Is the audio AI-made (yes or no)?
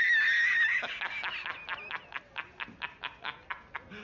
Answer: no